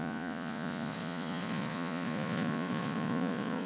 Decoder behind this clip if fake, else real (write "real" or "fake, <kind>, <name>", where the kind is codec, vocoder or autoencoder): fake, vocoder, Vocos